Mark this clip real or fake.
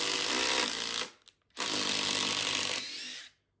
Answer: real